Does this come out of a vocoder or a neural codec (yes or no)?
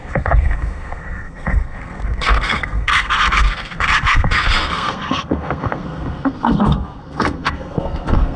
yes